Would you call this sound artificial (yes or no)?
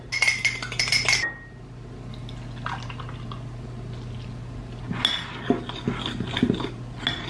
no